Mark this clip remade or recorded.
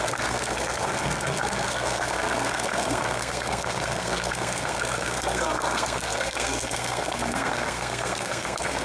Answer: remade